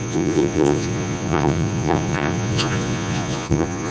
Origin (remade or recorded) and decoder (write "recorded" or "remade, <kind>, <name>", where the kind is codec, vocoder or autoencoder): remade, vocoder, Vocos